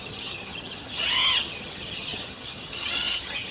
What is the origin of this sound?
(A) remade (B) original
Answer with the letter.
A